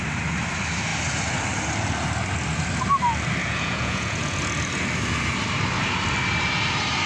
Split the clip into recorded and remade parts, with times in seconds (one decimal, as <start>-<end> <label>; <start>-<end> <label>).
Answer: 0.0-3.4 recorded; 3.4-4.4 remade; 4.4-7.1 recorded

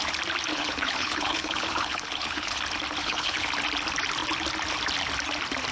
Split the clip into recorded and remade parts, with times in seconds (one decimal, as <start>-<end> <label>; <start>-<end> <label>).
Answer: 0.0-0.5 recorded; 0.5-2.6 remade; 2.6-3.0 recorded; 3.0-3.5 remade; 3.5-5.7 recorded

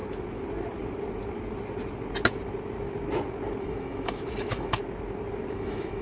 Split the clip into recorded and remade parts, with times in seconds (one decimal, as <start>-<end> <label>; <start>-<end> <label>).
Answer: 0.0-3.6 recorded; 3.6-4.8 remade; 4.8-5.5 recorded; 5.5-6.0 remade

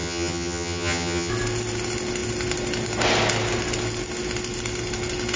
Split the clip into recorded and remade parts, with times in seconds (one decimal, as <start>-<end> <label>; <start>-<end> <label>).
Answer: 0.0-1.3 remade; 1.3-5.4 recorded

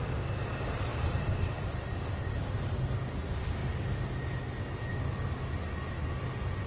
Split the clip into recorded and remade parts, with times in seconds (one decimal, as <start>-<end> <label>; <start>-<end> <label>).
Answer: 0.0-0.9 recorded; 0.9-1.7 remade; 1.7-6.7 recorded

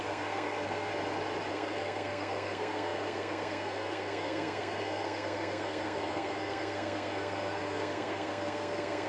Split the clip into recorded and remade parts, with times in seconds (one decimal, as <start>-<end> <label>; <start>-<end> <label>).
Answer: 0.0-0.9 remade; 0.9-1.5 recorded; 1.5-9.1 remade

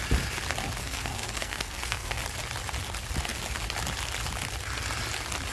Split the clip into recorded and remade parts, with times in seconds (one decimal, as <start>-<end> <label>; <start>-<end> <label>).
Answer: 0.0-0.8 recorded; 0.8-2.2 remade; 2.2-5.5 recorded